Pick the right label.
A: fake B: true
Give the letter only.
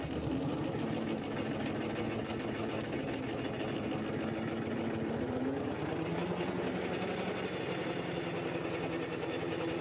B